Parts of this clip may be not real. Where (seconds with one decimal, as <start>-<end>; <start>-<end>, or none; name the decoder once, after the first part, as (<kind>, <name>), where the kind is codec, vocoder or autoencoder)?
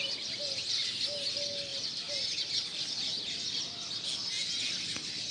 none